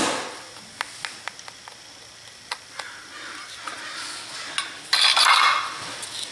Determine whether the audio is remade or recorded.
recorded